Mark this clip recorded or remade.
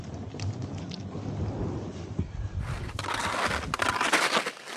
recorded